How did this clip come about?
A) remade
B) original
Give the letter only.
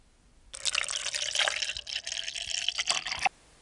B